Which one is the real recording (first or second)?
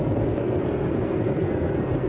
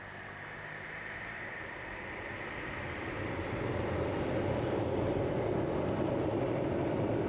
second